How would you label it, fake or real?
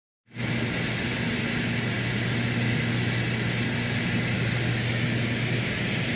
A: real